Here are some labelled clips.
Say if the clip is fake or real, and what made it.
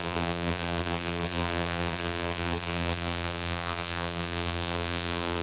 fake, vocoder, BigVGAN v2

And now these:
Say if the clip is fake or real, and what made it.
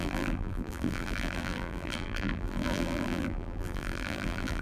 fake, vocoder, BigVGAN v2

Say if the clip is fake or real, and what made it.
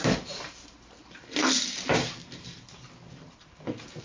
fake, vocoder, BigVGAN v2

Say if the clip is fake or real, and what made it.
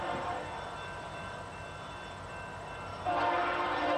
real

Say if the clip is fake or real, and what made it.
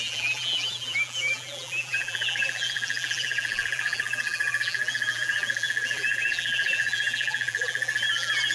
fake, vocoder, BigVGAN v2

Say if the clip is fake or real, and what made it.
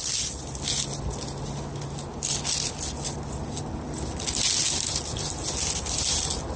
real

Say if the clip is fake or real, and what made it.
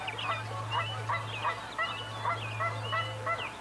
real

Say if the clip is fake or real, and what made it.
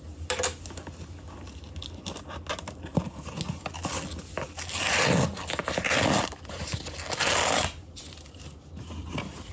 real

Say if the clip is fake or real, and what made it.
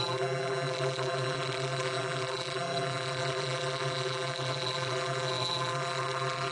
fake, vocoder, BigVGAN v2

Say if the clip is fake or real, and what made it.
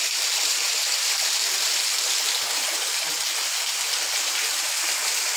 fake, vocoder, BigVGAN v2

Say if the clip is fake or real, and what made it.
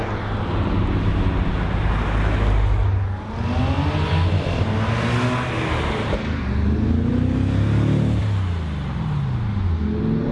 real